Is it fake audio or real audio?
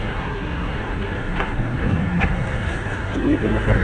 fake